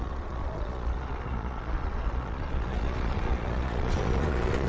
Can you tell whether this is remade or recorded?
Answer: remade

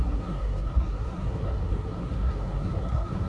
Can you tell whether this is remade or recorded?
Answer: remade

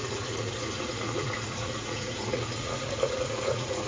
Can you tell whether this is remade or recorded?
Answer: remade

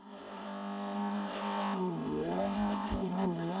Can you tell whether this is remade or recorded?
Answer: remade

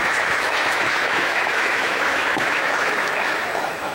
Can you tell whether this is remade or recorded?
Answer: remade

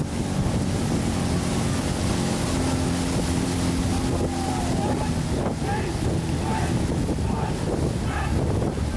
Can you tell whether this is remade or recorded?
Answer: recorded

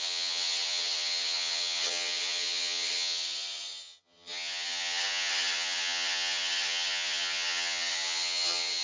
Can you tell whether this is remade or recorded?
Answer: remade